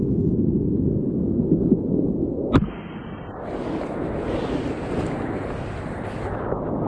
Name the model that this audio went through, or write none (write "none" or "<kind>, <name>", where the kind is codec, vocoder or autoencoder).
none